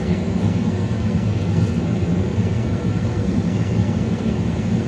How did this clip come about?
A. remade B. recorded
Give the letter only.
A